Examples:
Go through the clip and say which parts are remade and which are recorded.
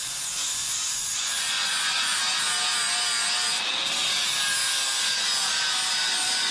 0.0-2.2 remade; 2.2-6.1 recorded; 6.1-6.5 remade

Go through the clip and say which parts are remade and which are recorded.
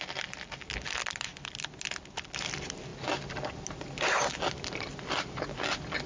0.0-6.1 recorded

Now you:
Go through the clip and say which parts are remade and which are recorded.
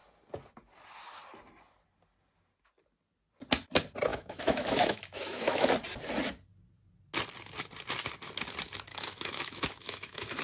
0.0-4.1 recorded; 4.1-5.7 remade; 5.7-8.9 recorded; 8.9-10.4 remade